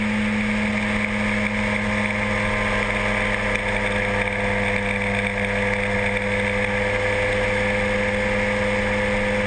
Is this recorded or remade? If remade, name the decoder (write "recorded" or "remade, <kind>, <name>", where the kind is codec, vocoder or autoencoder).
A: recorded